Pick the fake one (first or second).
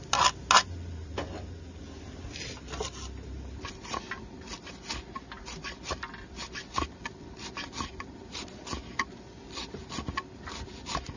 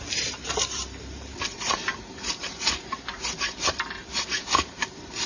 second